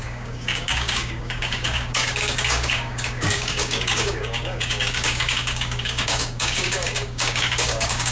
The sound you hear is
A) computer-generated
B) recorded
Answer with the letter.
A